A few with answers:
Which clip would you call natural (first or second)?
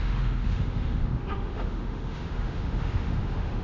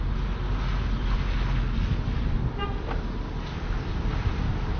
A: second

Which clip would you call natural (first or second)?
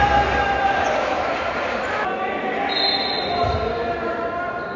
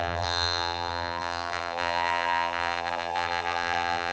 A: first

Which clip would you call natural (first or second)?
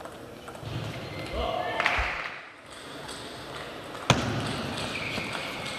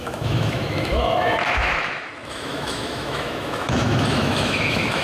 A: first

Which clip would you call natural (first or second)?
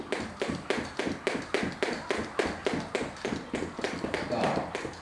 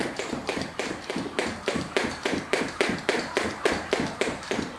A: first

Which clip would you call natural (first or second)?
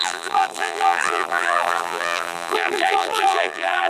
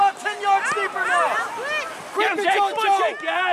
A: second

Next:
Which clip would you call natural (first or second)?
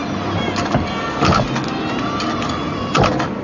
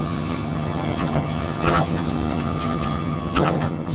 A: first